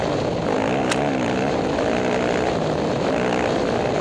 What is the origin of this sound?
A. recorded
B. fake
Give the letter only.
A